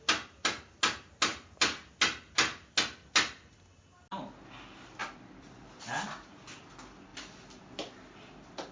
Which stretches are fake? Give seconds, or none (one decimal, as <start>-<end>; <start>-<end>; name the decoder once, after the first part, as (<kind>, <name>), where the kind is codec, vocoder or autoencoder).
5.0-6.6 (vocoder, BigVGAN v2); 7.1-7.6